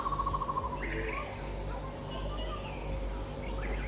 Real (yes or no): yes